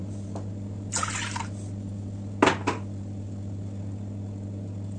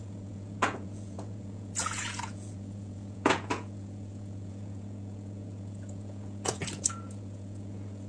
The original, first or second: first